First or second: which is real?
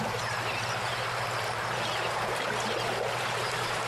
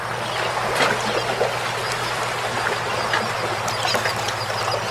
second